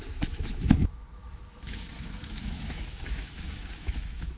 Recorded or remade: remade